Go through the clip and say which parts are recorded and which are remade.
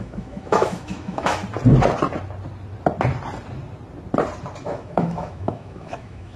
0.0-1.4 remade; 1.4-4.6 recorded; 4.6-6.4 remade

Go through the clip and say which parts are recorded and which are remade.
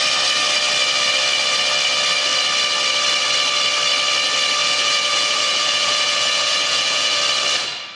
0.0-4.6 recorded; 4.6-7.2 remade; 7.2-8.0 recorded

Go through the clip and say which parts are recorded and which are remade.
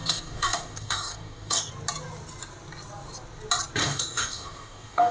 0.0-1.7 remade; 1.7-3.8 recorded; 3.8-5.1 remade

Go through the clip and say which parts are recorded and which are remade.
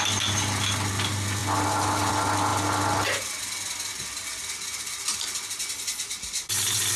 0.0-7.0 recorded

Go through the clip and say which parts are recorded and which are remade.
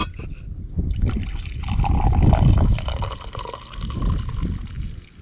0.0-5.2 recorded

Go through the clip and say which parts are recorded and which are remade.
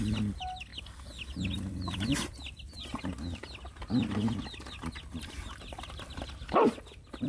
0.0-0.7 recorded; 0.7-3.1 remade; 3.1-7.3 recorded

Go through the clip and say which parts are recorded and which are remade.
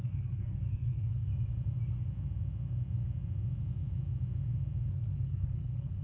0.0-1.3 remade; 1.3-4.9 recorded; 4.9-6.0 remade